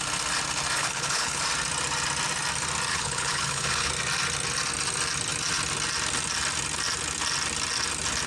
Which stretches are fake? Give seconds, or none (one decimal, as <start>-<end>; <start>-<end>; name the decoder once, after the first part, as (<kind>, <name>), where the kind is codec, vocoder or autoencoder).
0.8-1.4 (codec, HILCodec); 2.9-3.9